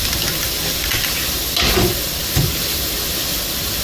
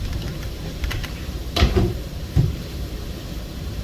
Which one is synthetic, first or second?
second